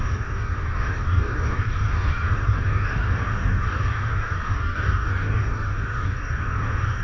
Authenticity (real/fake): fake